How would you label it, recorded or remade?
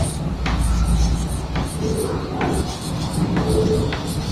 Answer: recorded